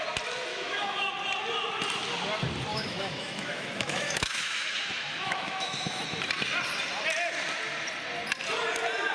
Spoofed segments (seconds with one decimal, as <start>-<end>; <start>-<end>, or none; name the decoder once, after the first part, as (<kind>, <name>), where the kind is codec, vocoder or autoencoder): 0.5-1.1 (autoencoder, DAC-VAE); 2.7-6.0